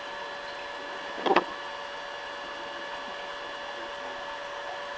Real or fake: real